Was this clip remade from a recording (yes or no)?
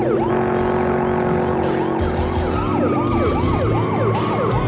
no